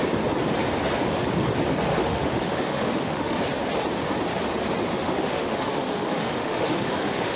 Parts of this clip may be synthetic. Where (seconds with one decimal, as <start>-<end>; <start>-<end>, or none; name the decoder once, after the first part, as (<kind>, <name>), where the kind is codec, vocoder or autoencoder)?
1.9-3.4 (autoencoder, DAC-VAE); 4.9-7.4